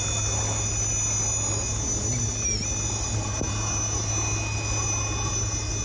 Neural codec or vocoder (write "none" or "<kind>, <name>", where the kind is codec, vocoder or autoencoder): none